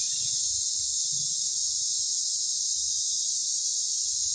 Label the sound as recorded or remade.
recorded